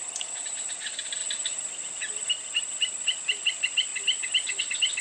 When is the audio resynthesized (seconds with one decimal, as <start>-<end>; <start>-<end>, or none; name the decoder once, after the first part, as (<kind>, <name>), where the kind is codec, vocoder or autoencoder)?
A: none